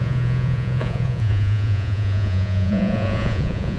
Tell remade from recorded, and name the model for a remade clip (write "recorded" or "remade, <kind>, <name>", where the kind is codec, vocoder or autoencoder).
remade, vocoder, Vocos